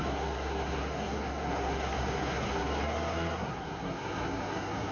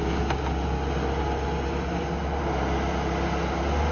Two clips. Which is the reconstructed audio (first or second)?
first